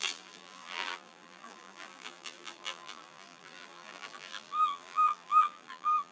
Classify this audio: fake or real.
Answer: fake